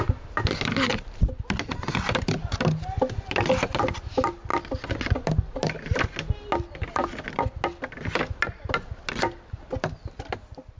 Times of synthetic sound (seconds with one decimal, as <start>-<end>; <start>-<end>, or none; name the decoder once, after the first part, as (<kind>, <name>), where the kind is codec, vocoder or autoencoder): none